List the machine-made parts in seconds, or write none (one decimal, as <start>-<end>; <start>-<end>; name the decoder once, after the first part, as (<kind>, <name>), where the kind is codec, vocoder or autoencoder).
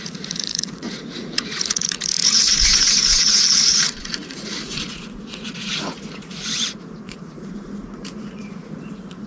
0.0-9.3 (vocoder, Vocos)